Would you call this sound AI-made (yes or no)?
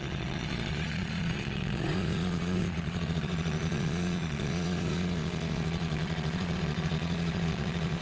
yes